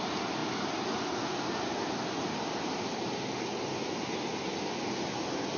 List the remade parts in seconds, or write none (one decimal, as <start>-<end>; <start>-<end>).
none